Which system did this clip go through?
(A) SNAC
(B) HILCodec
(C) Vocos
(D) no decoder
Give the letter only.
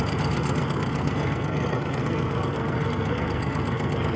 A